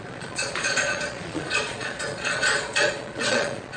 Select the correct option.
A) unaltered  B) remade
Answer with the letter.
B